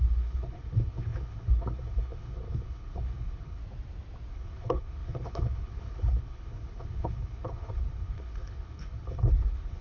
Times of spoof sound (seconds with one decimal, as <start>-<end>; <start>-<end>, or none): 0.0-3.6; 4.3-9.8